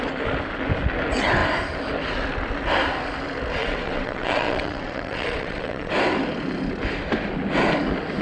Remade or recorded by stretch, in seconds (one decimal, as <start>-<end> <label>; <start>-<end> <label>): 0.0-3.6 recorded; 3.6-5.9 remade; 5.9-8.2 recorded